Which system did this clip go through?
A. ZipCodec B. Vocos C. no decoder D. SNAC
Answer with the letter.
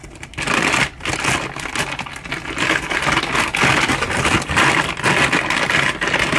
C